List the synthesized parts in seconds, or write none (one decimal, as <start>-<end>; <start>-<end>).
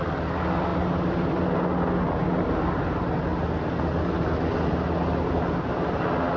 none